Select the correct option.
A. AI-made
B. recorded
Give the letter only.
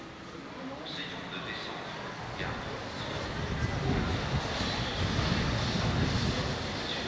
B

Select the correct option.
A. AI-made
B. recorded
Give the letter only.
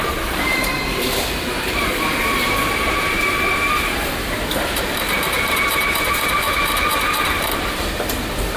A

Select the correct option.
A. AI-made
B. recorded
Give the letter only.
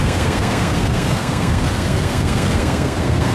A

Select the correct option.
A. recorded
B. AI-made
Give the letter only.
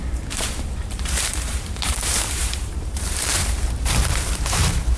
B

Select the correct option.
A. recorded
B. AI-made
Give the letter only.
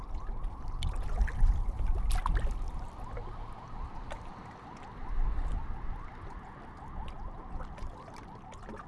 A